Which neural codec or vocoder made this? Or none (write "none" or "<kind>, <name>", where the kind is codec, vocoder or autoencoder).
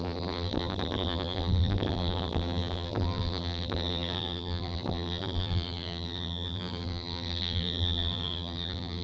vocoder, BigVGAN v2